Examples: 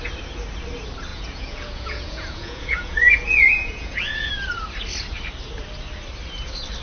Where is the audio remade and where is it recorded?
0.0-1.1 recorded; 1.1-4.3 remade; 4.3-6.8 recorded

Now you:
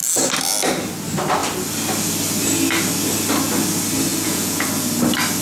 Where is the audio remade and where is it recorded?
0.0-4.1 recorded; 4.1-4.7 remade; 4.7-5.4 recorded

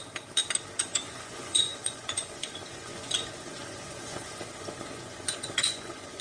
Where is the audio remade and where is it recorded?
0.0-0.8 recorded; 0.8-6.2 remade